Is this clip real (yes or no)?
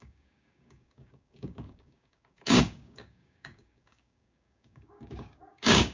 no